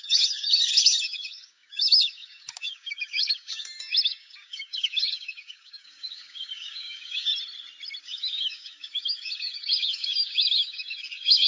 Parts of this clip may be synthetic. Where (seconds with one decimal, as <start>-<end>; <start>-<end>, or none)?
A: 0.0-7.3; 8.0-11.5